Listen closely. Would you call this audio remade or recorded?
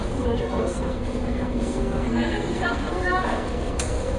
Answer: remade